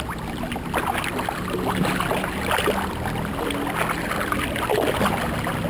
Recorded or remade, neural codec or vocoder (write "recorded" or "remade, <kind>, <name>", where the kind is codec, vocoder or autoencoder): recorded